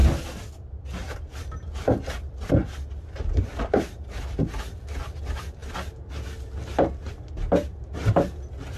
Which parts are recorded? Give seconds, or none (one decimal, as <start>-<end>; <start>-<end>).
0.0-8.8